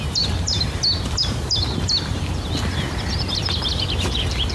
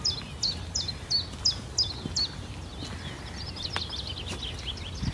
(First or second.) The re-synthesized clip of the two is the first